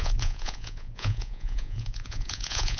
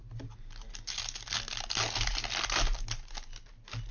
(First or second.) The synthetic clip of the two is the first